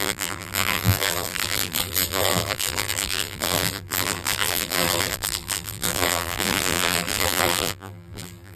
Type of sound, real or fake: fake